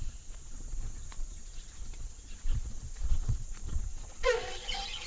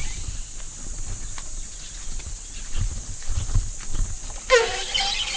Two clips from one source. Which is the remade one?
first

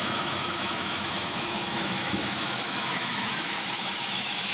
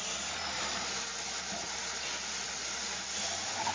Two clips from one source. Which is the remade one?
first